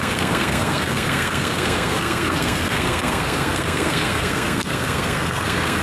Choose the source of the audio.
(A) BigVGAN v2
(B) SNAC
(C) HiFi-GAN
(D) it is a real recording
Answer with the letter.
B